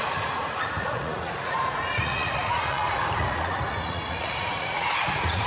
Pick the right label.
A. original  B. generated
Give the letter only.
B